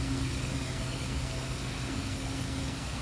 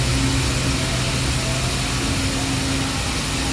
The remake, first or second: first